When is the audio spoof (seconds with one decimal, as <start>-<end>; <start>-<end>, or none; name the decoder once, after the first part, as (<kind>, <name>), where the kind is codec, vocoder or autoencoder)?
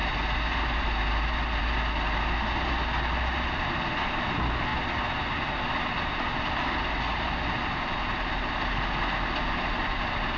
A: none